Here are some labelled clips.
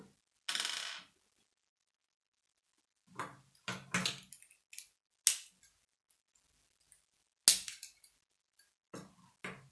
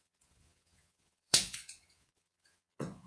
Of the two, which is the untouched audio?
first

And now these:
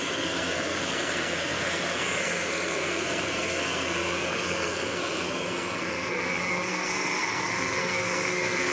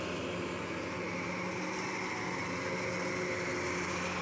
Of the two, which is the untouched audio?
second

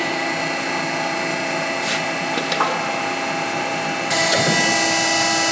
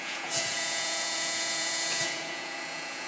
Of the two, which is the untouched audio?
first